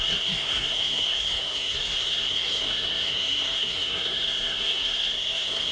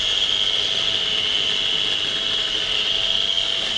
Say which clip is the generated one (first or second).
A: first